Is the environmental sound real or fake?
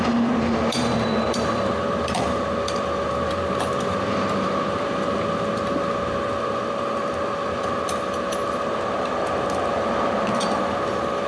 fake